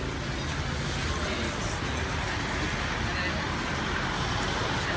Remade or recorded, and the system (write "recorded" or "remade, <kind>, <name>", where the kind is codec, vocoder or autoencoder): recorded